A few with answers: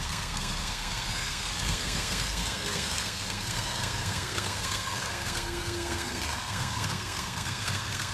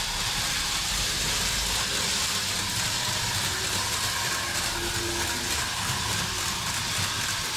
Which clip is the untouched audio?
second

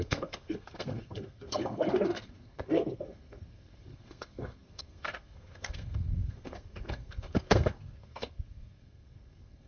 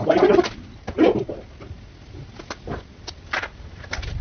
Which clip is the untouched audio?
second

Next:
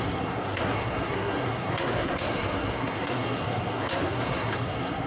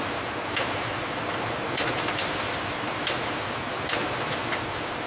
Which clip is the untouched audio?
second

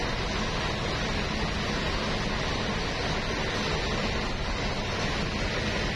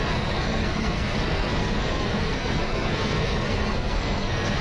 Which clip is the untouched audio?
first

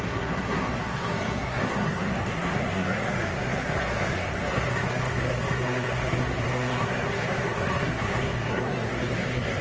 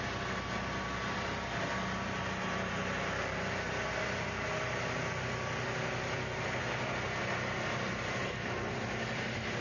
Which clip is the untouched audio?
second